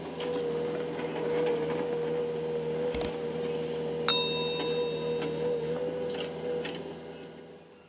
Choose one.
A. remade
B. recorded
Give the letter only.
B